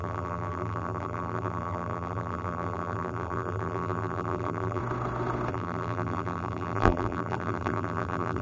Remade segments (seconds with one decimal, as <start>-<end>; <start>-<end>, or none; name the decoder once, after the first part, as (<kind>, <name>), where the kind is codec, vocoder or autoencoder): 0.0-4.8 (vocoder, BigVGAN v2); 5.5-8.4